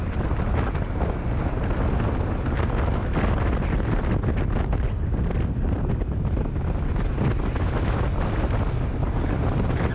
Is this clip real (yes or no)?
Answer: yes